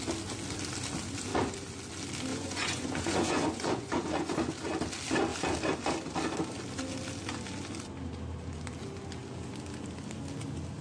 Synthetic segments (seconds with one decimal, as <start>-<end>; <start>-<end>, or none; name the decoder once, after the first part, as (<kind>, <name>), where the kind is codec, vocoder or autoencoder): 2.3-4.4 (vocoder, Vocos)